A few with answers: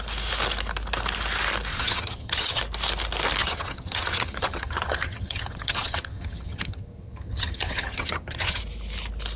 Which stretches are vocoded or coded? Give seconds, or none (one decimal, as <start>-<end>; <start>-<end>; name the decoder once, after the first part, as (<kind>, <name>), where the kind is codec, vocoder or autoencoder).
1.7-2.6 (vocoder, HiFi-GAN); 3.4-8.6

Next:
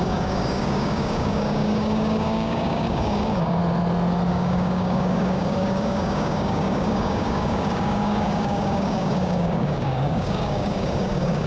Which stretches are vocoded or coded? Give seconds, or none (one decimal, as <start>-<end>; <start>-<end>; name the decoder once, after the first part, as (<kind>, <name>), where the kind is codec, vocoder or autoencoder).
0.0-3.6 (codec, DAC); 4.3-11.5

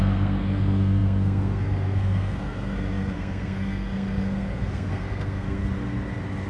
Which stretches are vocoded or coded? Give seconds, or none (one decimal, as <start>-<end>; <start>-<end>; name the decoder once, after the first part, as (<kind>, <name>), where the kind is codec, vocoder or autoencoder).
0.0-5.6 (codec, SNAC)

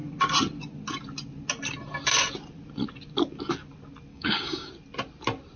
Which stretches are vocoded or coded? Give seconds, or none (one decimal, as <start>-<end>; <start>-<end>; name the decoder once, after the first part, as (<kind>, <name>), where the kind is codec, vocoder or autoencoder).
4.1-4.7 (codec, DAC)